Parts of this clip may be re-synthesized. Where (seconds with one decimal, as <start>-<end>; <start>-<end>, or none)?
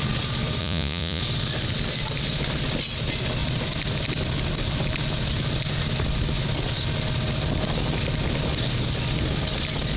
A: 0.6-1.2